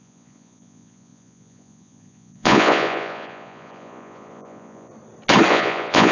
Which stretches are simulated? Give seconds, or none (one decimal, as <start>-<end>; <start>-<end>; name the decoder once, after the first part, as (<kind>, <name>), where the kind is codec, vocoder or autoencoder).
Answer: 0.0-4.9 (vocoder, Vocos); 5.5-6.1